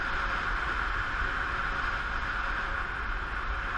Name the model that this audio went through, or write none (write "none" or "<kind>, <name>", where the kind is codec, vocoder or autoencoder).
none